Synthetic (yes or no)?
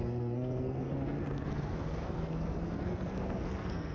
yes